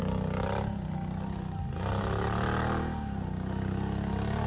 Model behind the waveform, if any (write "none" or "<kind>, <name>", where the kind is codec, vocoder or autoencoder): none